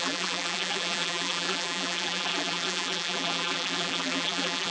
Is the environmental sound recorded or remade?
remade